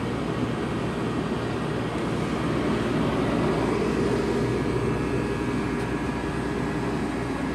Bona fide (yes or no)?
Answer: yes